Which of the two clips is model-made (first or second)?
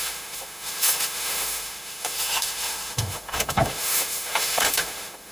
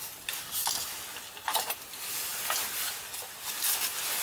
first